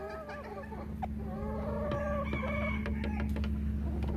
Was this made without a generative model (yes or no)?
yes